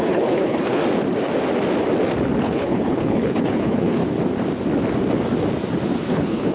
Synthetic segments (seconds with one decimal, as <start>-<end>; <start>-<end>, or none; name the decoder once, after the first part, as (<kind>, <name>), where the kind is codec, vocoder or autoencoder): 0.0-0.8 (codec, HILCodec); 2.4-4.0; 6.1-6.5